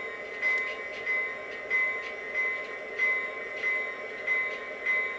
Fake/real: real